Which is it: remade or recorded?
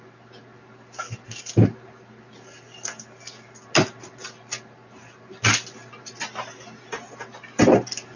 recorded